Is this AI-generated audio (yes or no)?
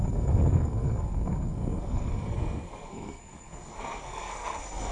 yes